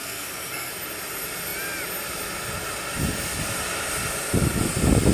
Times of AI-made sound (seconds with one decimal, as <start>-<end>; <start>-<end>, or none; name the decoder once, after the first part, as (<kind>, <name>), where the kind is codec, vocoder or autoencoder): 0.0-0.7 (codec, SNAC)